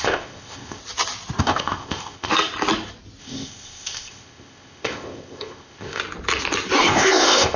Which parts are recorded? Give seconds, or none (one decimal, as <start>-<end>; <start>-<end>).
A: 0.8-1.4; 2.3-3.2; 6.0-6.8